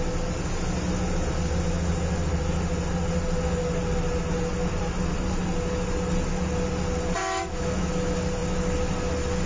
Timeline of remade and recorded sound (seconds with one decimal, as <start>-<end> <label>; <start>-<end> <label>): 0.0-7.2 recorded; 7.2-7.9 remade; 7.9-9.5 recorded